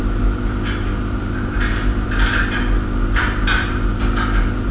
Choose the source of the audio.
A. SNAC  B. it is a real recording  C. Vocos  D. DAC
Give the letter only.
B